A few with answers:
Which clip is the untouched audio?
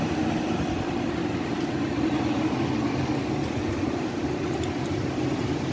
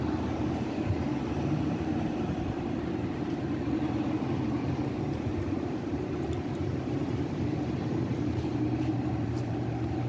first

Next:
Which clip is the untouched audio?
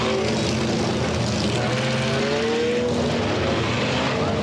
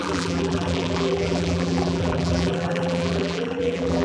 first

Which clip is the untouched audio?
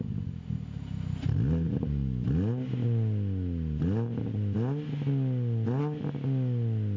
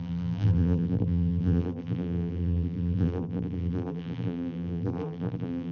first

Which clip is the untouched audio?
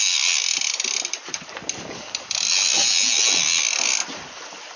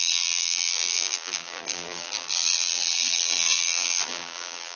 first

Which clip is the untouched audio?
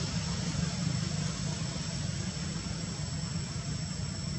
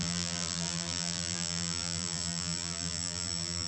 first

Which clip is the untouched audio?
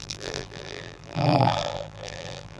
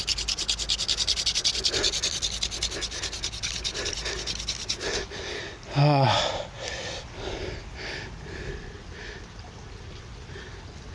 second